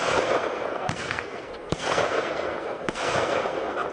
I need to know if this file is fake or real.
fake